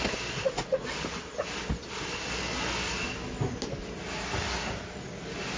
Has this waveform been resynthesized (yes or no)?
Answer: no